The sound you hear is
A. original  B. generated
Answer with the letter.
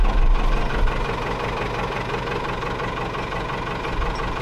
A